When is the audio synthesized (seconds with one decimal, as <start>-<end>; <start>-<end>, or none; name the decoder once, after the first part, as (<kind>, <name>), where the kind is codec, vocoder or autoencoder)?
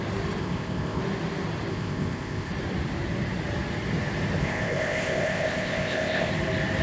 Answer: 0.4-1.0 (codec, ZipCodec); 1.7-2.5; 4.4-6.3